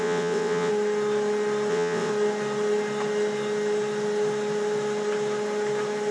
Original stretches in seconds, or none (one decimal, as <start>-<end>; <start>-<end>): 0.7-1.7; 2.1-6.1